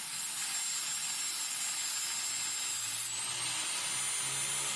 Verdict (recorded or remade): recorded